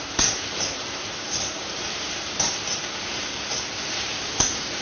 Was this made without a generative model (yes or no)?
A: no